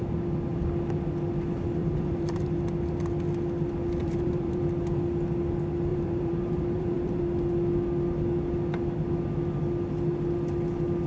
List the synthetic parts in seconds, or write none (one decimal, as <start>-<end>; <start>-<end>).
1.8-2.6; 4.0-4.6; 5.9-7.2